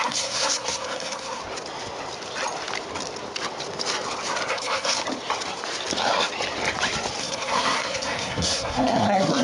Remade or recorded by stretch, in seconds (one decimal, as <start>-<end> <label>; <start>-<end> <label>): 0.0-1.4 remade; 1.4-4.5 recorded; 4.5-5.0 remade; 5.0-7.2 recorded; 7.2-9.4 remade